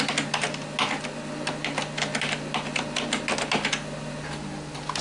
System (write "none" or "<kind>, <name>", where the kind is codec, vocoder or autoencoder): none